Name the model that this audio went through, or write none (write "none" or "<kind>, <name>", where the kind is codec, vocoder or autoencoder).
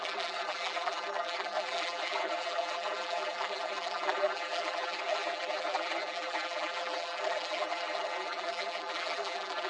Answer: vocoder, BigVGAN v2